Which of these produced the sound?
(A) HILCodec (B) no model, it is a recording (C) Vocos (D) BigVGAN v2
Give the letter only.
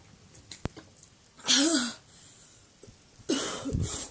B